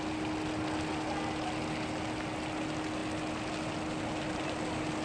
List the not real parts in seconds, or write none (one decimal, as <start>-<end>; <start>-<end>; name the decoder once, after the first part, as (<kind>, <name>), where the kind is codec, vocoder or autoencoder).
none